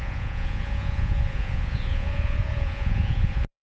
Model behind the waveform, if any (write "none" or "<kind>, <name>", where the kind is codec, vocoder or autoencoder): vocoder, Vocos